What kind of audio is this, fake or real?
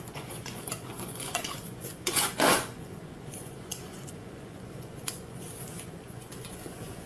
fake